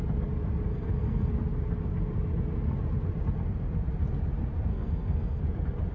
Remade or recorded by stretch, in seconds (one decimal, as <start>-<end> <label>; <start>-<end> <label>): 0.0-0.7 recorded; 0.7-1.3 remade; 1.3-4.7 recorded; 4.7-5.4 remade; 5.4-5.9 recorded